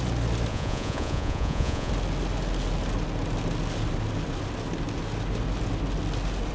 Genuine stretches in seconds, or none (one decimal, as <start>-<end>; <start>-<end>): 0.0-0.5; 1.9-6.5